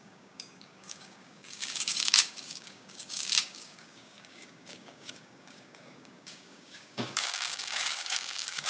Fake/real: fake